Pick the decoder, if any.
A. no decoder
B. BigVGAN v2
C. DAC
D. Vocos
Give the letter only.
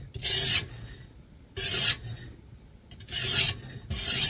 A